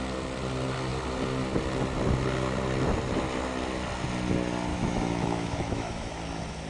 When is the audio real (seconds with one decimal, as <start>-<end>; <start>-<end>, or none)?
0.0-4.7; 6.2-6.7

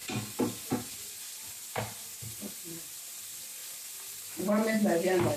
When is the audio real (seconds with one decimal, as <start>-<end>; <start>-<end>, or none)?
0.0-5.4

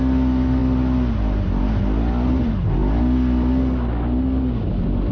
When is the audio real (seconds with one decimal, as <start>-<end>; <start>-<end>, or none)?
0.0-5.1